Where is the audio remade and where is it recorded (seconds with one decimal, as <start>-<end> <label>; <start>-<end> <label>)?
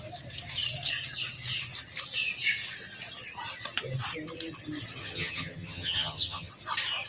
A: 0.0-5.0 recorded; 5.0-6.5 remade; 6.5-7.1 recorded